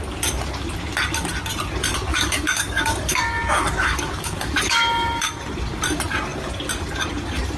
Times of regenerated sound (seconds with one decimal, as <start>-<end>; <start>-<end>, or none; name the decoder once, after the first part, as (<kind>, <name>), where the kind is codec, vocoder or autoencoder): 2.1-5.3 (codec, DAC)